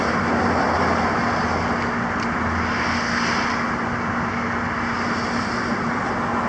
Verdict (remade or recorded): recorded